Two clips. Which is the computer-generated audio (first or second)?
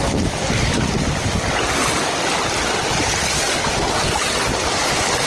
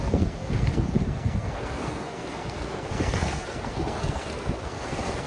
second